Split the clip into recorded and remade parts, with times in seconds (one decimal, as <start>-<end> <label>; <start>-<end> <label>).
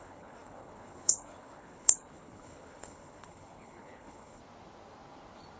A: 0.0-4.4 remade; 4.4-5.6 recorded